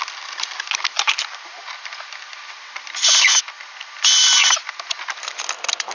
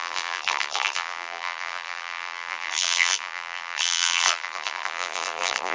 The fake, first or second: second